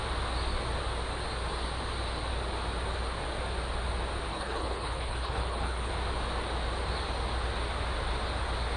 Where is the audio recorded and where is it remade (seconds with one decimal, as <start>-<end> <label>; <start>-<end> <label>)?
0.0-4.3 recorded; 4.3-5.9 remade; 5.9-8.8 recorded